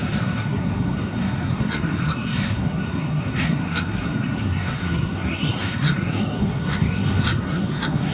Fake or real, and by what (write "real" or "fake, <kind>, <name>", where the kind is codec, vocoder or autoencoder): fake, codec, SNAC